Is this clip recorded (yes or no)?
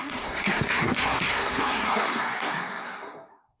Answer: no